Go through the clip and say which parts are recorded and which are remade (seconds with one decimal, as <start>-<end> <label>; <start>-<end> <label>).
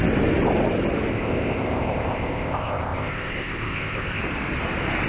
0.0-1.1 recorded; 1.1-4.2 remade; 4.2-5.1 recorded